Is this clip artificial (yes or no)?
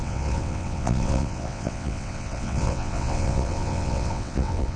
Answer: yes